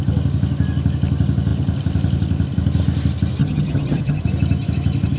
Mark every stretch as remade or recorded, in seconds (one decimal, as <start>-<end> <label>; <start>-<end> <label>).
0.0-3.4 recorded; 3.4-4.2 remade; 4.2-5.2 recorded